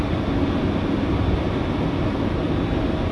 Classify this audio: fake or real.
real